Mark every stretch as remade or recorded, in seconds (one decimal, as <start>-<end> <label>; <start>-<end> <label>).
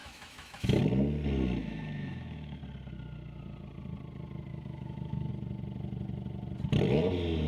0.0-0.8 remade; 0.8-1.6 recorded; 1.6-2.6 remade; 2.6-4.5 recorded; 4.5-5.3 remade; 5.3-7.5 recorded